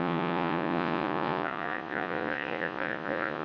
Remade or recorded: remade